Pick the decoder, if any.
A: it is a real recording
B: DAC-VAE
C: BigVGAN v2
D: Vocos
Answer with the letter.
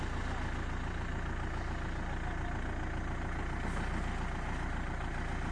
A